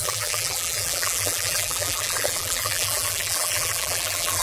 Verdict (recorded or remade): remade